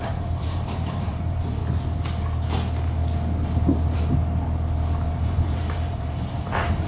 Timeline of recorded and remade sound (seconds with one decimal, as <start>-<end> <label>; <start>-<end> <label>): 0.0-1.6 remade; 1.6-5.1 recorded; 5.1-6.9 remade